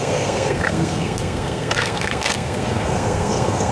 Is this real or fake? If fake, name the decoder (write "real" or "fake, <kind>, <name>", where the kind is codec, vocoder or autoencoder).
fake, codec, SNAC